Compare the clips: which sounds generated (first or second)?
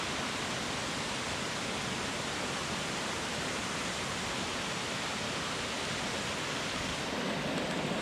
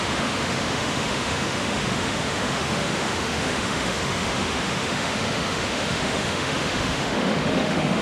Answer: second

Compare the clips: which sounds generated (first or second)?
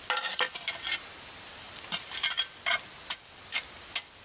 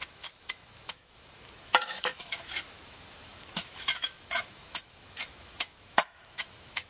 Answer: second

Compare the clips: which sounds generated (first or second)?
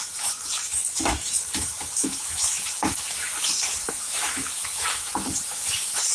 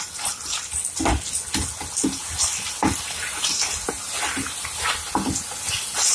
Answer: first